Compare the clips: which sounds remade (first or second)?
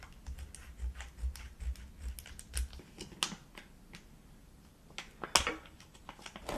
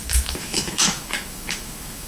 second